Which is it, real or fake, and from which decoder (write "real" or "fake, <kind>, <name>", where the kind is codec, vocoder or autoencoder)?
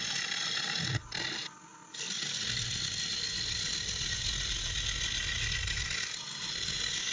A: real